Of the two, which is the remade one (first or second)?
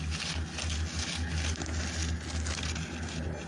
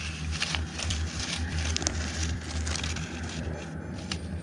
second